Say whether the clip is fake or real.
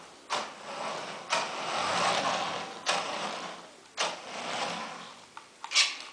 real